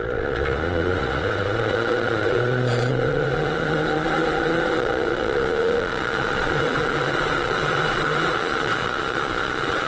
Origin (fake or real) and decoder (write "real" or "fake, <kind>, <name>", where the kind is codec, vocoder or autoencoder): fake, vocoder, Vocos